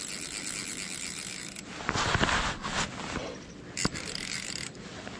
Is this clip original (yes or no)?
yes